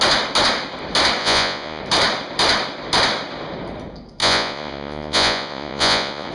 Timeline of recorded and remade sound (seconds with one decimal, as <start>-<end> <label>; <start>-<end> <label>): 0.0-1.2 recorded; 1.2-1.8 remade; 1.8-4.2 recorded; 4.2-6.3 remade